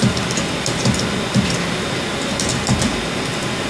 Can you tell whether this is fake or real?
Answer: real